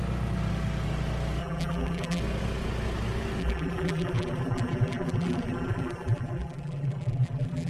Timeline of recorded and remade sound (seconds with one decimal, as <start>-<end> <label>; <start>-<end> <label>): 0.0-1.4 recorded; 1.4-2.2 remade; 2.2-3.4 recorded; 3.4-7.7 remade